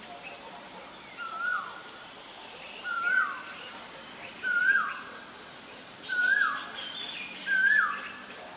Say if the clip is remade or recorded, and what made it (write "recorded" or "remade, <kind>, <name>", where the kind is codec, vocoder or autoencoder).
remade, vocoder, BigVGAN v2